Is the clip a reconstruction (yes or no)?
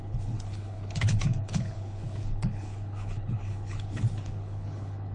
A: yes